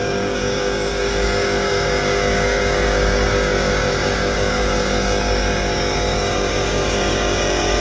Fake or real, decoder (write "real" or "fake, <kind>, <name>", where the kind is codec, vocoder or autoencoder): fake, codec, DAC